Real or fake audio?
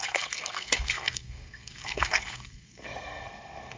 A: fake